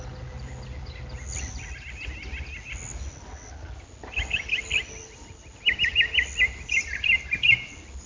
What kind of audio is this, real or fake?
real